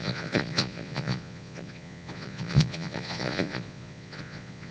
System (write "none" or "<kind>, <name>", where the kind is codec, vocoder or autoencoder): vocoder, Vocos